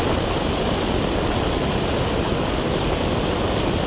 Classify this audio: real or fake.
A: real